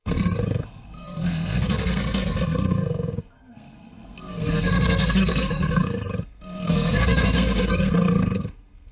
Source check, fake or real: fake